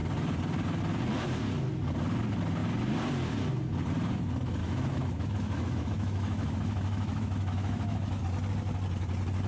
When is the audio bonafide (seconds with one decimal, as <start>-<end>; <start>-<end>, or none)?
0.0-4.6; 8.2-9.5